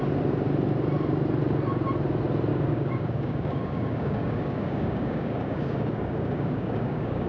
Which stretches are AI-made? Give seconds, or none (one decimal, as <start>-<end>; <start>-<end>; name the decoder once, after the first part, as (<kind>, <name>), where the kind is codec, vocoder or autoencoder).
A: 2.5-7.3 (codec, DAC)